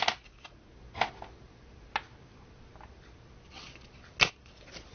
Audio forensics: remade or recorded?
recorded